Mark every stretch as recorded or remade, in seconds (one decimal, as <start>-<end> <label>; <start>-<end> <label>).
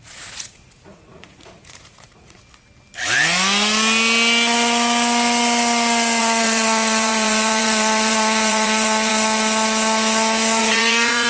0.0-2.4 remade; 2.4-6.2 recorded; 6.2-9.1 remade; 9.1-10.6 recorded; 10.6-11.3 remade